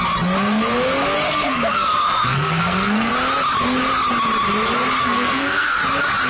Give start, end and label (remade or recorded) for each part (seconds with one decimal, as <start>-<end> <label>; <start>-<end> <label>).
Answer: 0.0-1.3 recorded; 1.3-3.1 remade; 3.1-5.0 recorded; 5.0-5.8 remade; 5.8-6.3 recorded